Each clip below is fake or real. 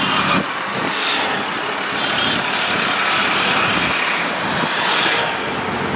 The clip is real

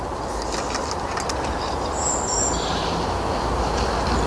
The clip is real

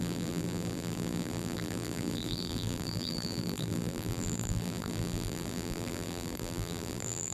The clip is fake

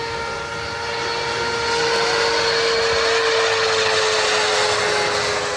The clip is real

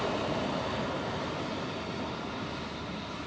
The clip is real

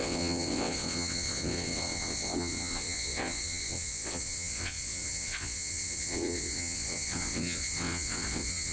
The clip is fake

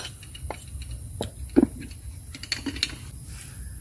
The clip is real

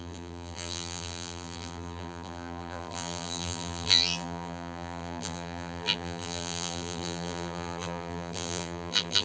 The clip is fake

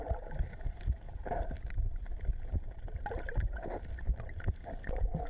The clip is real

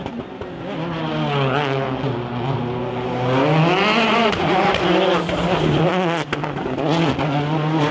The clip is real